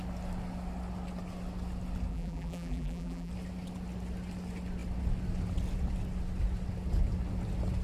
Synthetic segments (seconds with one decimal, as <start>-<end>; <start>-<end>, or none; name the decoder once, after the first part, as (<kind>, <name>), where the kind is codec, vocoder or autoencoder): 2.1-3.3 (vocoder, BigVGAN v2)